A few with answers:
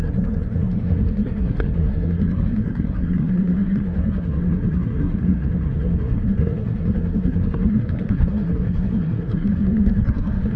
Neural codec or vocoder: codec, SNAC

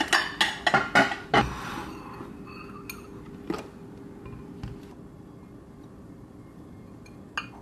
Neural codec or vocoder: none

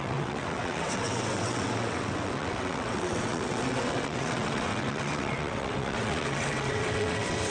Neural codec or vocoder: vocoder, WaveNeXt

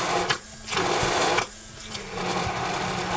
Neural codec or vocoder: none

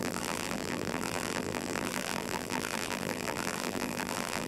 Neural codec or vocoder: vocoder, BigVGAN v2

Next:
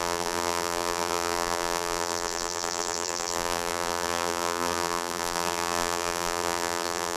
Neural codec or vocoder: vocoder, BigVGAN v2